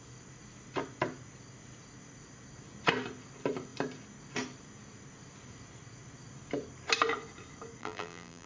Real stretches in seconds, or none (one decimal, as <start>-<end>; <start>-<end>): 0.0-7.8